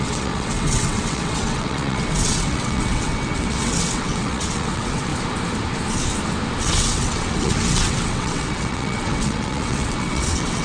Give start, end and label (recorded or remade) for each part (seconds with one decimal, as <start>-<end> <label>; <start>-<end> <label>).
0.0-5.1 remade; 5.1-6.6 recorded; 6.6-10.6 remade